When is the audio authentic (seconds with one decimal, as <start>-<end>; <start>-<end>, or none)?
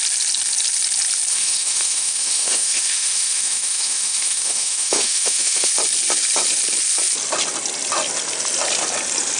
0.0-1.3; 5.7-9.4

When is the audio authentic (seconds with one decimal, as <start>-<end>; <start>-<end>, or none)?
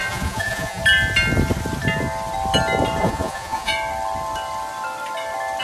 0.8-3.0; 3.7-5.6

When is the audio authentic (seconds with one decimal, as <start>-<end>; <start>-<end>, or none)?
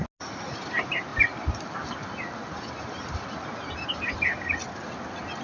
0.0-5.4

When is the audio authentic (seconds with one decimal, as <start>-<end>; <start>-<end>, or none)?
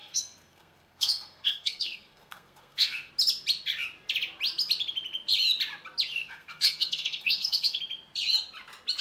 3.1-6.1; 7.8-9.0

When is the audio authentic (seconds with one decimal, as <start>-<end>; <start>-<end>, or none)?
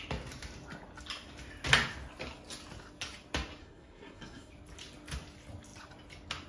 0.0-3.6; 4.5-6.5